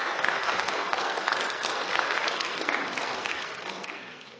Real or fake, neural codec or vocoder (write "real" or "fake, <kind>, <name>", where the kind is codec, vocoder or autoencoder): fake, codec, SNAC